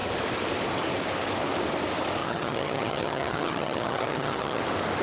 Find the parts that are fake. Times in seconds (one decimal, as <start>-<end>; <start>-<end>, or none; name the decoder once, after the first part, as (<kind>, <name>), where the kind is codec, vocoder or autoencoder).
2.2-4.6 (vocoder, HiFi-GAN)